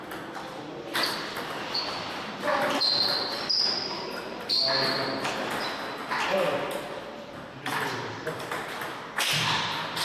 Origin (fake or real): real